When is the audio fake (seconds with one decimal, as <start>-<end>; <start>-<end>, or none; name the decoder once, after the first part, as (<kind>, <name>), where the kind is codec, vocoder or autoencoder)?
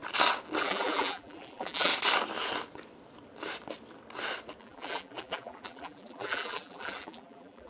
0.6-1.9 (vocoder, BigVGAN v2); 4.6-7.7